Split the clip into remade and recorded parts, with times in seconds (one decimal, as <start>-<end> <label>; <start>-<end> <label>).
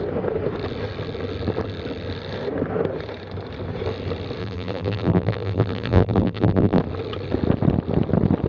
0.0-4.4 recorded; 4.4-6.8 remade; 6.8-8.5 recorded